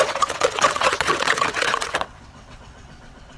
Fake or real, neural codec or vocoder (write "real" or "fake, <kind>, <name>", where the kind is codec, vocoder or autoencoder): fake, vocoder, WaveNeXt